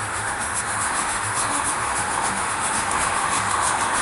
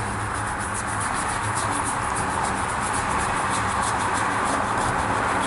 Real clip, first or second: second